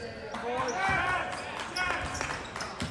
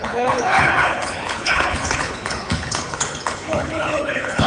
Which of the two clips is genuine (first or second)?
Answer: first